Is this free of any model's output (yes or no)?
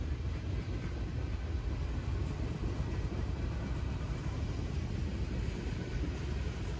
yes